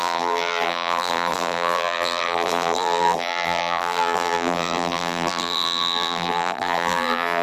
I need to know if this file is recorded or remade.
remade